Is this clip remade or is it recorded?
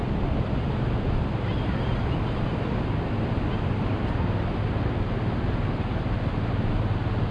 recorded